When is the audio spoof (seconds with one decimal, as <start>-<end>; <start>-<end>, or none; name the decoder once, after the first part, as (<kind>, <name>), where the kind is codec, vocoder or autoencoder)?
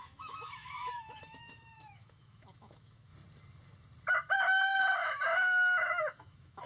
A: 0.0-3.1 (autoencoder, DAC-VAE); 4.1-6.7